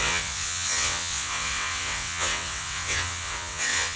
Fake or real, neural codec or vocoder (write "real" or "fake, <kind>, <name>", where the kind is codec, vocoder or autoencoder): fake, vocoder, WaveNeXt